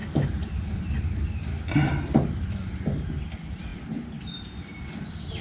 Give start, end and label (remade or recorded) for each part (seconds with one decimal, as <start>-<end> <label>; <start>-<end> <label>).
0.0-3.2 remade; 3.2-5.4 recorded